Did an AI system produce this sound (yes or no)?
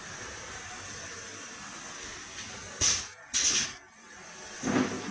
no